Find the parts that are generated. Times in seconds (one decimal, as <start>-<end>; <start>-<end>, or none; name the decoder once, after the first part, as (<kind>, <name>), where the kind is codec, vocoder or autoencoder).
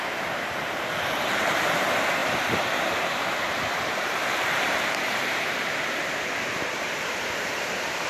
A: 0.0-2.2 (vocoder, BigVGAN v2); 2.8-8.1